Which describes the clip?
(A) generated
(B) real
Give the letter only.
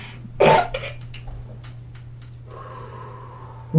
B